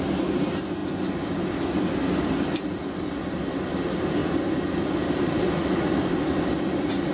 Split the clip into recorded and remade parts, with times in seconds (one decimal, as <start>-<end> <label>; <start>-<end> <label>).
0.0-7.1 recorded